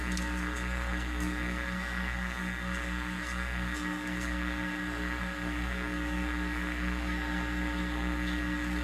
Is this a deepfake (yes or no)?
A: yes